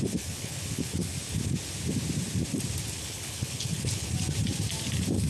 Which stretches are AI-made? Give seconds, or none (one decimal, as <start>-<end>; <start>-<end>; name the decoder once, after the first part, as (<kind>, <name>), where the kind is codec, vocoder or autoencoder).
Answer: 0.0-1.1 (codec, HILCodec); 3.0-4.1